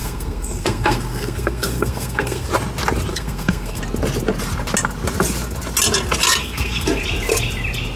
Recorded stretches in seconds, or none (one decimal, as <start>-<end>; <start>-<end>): 2.5-3.1; 3.8-6.4; 7.0-8.0